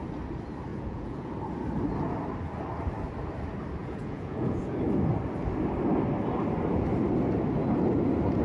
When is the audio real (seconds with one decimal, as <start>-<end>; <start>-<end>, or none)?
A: 0.0-0.7; 1.3-3.8; 4.8-8.4